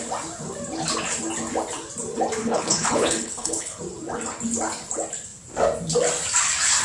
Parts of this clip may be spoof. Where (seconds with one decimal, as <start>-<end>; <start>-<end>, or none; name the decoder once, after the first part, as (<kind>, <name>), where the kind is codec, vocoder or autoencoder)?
2.4-3.8 (codec, HILCodec)